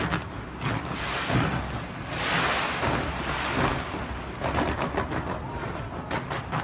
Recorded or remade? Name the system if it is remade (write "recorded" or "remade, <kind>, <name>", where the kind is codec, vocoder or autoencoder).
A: recorded